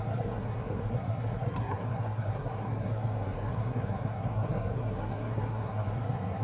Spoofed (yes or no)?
yes